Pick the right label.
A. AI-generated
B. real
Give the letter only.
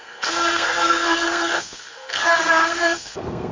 A